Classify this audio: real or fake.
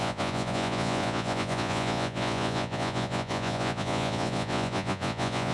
fake